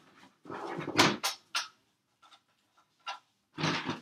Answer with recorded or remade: recorded